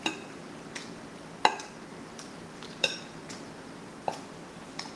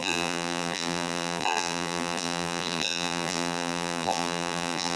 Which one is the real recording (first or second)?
first